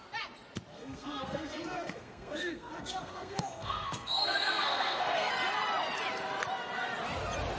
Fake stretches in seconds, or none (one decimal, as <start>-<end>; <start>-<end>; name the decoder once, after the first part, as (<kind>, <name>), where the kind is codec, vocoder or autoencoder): 0.7-5.3 (codec, SNAC)